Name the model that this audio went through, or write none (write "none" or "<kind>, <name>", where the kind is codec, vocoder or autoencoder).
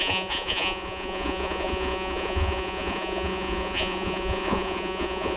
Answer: vocoder, Vocos